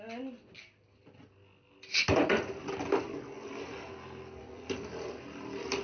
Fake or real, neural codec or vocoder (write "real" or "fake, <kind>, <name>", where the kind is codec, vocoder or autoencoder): real